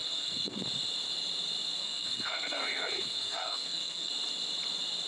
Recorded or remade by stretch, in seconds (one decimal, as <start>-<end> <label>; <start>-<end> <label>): 0.0-0.6 remade; 0.6-1.8 recorded; 1.8-4.1 remade; 4.1-5.1 recorded